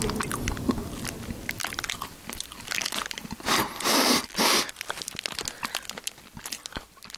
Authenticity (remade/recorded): recorded